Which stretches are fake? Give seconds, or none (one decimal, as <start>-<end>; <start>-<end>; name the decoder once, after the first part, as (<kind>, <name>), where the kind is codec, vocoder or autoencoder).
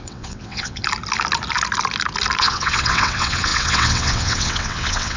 0.0-0.8 (vocoder, WaveNeXt); 2.4-5.2